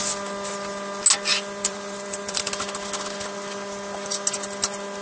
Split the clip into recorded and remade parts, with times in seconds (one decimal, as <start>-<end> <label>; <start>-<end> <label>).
0.0-1.3 recorded; 1.3-2.5 remade; 2.5-5.0 recorded